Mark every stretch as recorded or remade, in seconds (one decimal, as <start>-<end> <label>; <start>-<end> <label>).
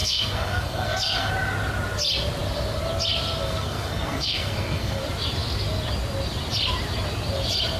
0.0-1.3 remade; 1.3-3.4 recorded; 3.4-5.0 remade; 5.0-7.8 recorded